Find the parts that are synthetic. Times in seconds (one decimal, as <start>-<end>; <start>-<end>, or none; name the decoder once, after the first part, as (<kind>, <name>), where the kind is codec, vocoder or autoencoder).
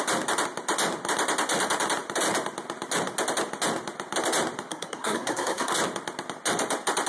4.7-5.7 (codec, SNAC)